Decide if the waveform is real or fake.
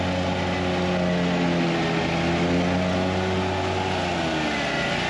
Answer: real